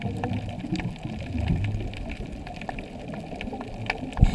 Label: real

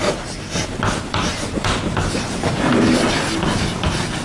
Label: real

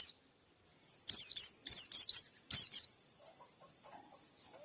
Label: real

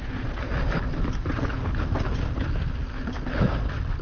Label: real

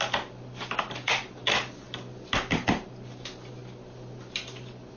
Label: real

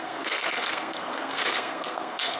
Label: fake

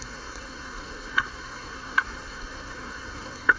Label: fake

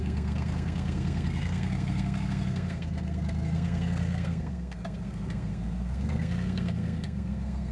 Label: fake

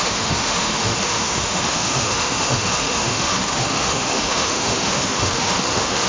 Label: fake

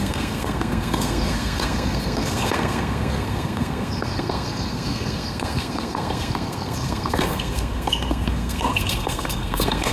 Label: fake